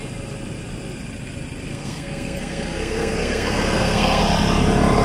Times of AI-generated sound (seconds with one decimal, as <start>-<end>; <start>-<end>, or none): 1.7-4.2